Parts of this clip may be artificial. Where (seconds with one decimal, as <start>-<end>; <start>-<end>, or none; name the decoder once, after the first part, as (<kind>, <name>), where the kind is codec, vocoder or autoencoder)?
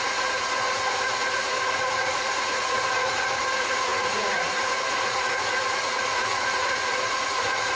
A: 0.0-7.7 (vocoder, Vocos)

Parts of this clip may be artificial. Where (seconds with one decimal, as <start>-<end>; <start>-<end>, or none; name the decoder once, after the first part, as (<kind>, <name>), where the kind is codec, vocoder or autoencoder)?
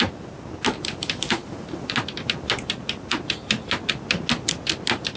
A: none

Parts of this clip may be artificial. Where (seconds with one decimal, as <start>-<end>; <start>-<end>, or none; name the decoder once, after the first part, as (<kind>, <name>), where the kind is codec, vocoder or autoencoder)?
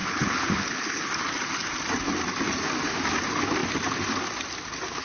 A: 0.0-1.1 (codec, HILCodec)